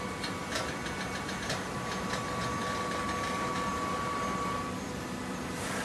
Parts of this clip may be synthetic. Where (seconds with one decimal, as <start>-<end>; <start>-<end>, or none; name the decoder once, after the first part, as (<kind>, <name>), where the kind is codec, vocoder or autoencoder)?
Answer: none